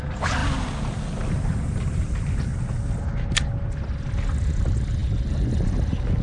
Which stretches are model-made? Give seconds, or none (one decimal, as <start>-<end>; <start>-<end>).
0.0-0.4; 1.4-2.5; 4.1-6.2